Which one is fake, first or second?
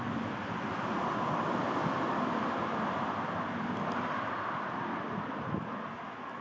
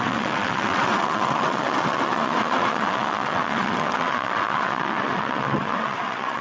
second